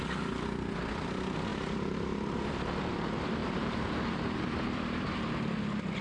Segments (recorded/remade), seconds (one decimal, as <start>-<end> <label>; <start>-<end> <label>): 0.0-1.5 recorded; 1.5-2.5 remade; 2.5-3.4 recorded; 3.4-5.3 remade; 5.3-6.0 recorded